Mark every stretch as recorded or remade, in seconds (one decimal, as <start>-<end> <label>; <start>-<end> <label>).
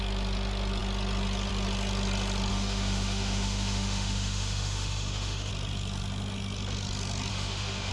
0.0-2.5 recorded; 2.5-5.5 remade; 5.5-7.3 recorded; 7.3-7.9 remade